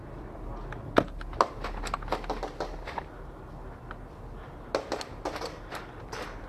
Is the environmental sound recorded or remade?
recorded